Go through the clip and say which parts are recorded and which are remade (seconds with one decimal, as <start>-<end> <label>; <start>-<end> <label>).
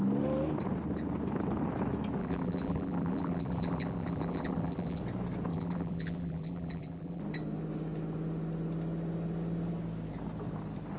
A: 0.0-2.2 recorded; 2.2-5.0 remade; 5.0-5.5 recorded; 5.5-7.2 remade; 7.2-11.0 recorded